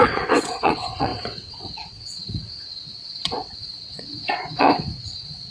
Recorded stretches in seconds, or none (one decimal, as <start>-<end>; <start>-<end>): none